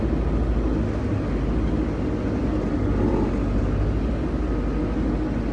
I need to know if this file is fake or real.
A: real